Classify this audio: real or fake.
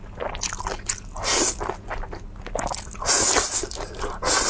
real